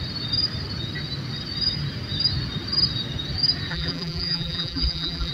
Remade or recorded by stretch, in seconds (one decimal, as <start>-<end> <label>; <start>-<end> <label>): 0.0-3.7 recorded; 3.7-5.3 remade